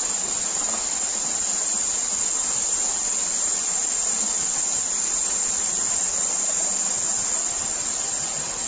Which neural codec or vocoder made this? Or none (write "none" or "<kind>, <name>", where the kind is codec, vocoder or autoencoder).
none